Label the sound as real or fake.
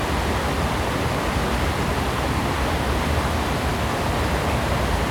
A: real